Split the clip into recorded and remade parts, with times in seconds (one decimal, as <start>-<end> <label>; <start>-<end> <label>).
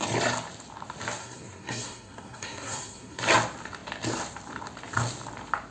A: 0.0-1.2 recorded; 1.2-3.2 remade; 3.2-5.7 recorded